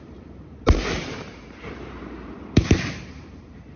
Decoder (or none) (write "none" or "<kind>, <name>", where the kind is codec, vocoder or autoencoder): vocoder, BigVGAN v2